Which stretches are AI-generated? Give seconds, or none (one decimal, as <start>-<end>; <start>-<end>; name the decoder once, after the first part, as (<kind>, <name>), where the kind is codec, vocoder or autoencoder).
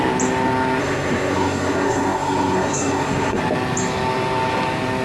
0.8-3.4 (codec, SNAC)